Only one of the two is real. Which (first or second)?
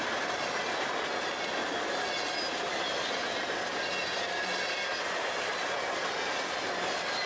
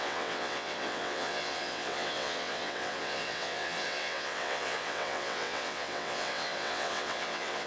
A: first